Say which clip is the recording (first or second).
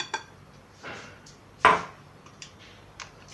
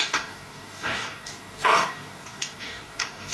first